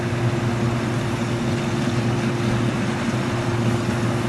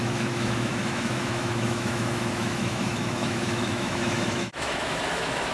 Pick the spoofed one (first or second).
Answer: second